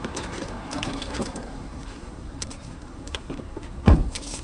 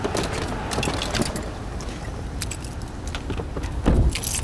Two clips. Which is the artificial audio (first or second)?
first